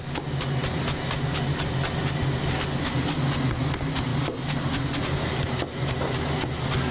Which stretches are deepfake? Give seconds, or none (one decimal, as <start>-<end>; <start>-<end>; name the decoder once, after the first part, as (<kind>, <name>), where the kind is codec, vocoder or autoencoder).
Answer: 4.1-4.9 (vocoder, BigVGAN v2)